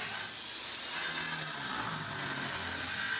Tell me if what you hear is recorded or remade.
recorded